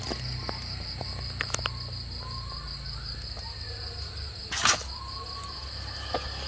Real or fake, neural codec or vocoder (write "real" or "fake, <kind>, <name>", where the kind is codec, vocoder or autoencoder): real